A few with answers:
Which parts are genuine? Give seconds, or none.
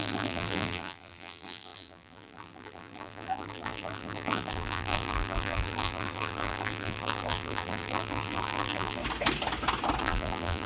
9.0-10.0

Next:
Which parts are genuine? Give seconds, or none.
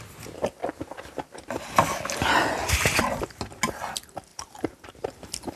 0.0-0.6; 1.4-2.6; 3.2-4.3; 4.9-5.6